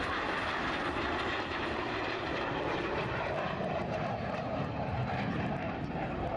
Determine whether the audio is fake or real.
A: fake